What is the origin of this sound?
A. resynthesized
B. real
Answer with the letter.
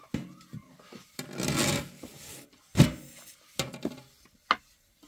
B